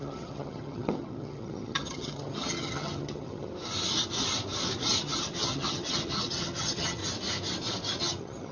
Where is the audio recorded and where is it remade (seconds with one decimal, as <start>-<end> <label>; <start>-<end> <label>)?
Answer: 0.0-3.5 remade; 3.5-5.0 recorded; 5.0-7.0 remade; 7.0-8.0 recorded; 8.0-8.5 remade